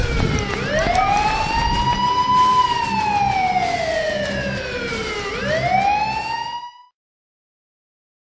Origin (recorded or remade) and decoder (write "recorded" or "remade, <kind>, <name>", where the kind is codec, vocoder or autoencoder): recorded